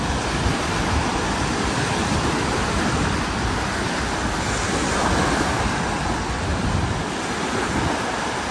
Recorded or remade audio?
recorded